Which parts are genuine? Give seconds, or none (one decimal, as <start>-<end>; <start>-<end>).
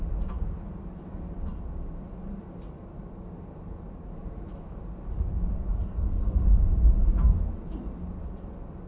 0.0-5.6; 6.6-8.9